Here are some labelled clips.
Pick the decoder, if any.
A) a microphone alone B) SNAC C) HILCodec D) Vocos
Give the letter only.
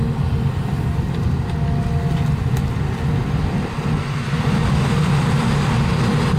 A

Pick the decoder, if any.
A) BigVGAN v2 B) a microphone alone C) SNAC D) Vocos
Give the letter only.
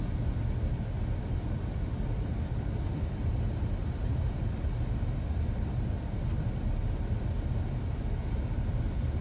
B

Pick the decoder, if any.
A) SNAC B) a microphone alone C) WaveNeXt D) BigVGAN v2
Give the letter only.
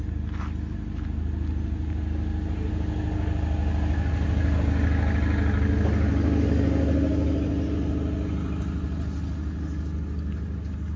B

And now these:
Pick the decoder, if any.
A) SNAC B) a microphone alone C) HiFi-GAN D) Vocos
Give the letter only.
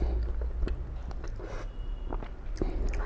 B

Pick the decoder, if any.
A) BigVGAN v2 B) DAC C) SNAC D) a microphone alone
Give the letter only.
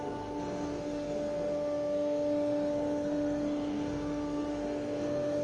C